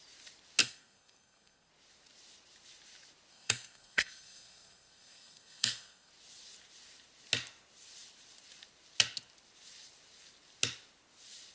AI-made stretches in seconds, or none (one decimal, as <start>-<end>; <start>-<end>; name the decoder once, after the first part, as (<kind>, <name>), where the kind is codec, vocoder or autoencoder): 0.6-1.7 (codec, SNAC); 3.3-6.1